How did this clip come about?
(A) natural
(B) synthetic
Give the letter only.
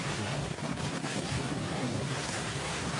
B